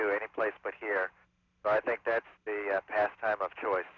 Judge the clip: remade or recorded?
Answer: recorded